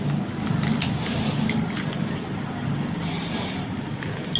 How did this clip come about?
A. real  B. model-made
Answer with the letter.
A